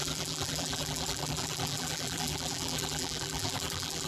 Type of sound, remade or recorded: remade